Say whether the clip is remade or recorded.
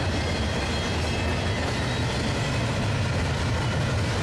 recorded